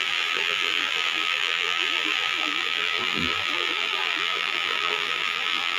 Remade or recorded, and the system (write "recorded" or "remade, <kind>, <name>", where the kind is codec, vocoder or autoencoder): remade, vocoder, BigVGAN v2